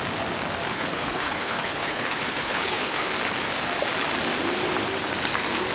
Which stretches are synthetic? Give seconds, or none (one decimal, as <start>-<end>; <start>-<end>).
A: 0.7-3.1